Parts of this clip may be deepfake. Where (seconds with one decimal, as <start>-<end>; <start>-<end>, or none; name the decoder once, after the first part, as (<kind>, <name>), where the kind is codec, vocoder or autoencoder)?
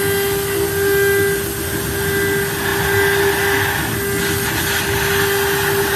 none